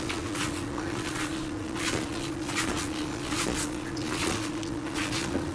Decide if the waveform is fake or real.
fake